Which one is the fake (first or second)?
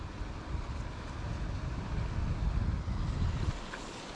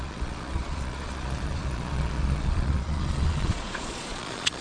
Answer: second